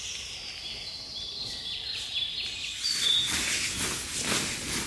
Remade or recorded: recorded